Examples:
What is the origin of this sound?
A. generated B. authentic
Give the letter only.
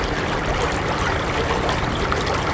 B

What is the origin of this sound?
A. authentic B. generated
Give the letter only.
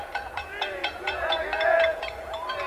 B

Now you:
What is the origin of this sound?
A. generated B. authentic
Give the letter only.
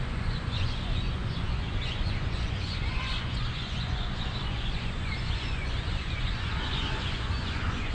A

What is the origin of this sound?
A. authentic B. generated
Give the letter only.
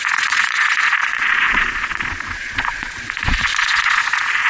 B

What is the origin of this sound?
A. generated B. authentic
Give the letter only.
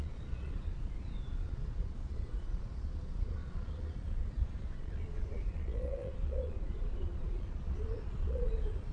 A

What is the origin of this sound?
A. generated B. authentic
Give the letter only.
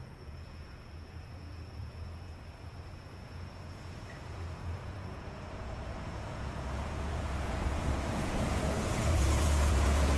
A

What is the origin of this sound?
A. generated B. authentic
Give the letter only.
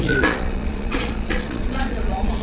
A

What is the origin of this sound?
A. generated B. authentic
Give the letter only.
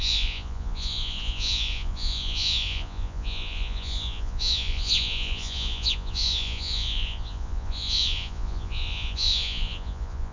A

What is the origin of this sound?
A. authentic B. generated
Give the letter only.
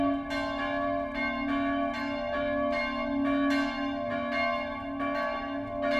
A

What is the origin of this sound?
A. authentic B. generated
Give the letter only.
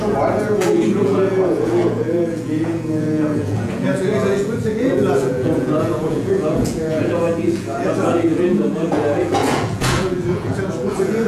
B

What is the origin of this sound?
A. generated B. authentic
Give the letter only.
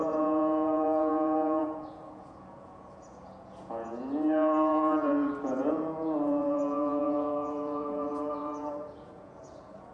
A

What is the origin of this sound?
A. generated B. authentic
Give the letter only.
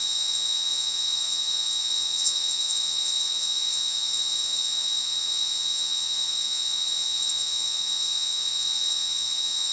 A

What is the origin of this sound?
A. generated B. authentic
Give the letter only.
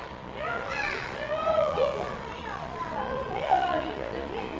A